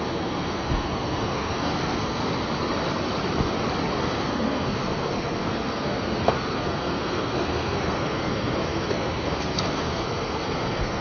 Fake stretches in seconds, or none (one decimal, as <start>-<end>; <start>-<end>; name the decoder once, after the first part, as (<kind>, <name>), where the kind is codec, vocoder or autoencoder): 0.0-2.2 (codec, SNAC); 4.0-11.0